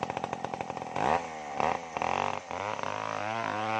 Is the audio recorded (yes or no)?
yes